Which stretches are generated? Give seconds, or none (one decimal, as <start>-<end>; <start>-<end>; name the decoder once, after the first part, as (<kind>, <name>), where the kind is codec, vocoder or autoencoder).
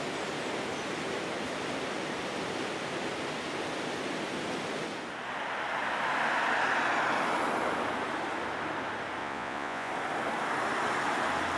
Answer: 9.2-9.9 (vocoder, Vocos)